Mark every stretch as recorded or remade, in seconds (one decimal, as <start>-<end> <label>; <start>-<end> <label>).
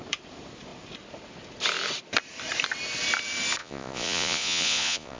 0.0-3.6 recorded; 3.6-5.2 remade